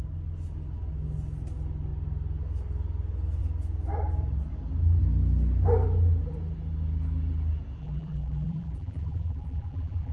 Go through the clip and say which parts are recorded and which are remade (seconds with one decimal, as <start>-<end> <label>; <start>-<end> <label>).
0.0-7.8 recorded; 7.8-10.1 remade